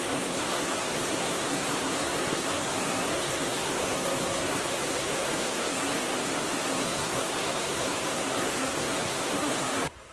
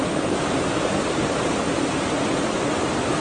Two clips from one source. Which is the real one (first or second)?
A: second